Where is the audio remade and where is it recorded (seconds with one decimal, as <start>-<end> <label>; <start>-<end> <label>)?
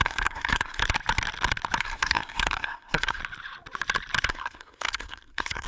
0.0-0.8 remade; 0.8-1.8 recorded; 1.8-3.2 remade; 3.2-4.3 recorded; 4.3-5.7 remade